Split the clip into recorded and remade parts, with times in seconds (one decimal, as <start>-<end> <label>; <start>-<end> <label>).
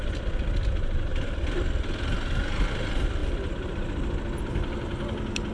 0.0-5.5 recorded